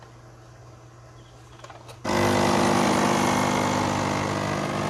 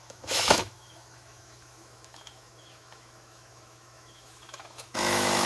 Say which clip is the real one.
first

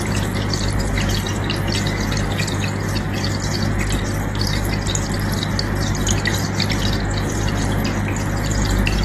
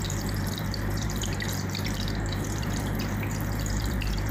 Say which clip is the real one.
first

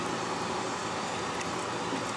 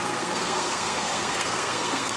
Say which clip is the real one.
first